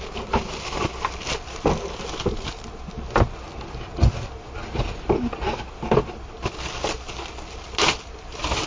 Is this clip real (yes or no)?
yes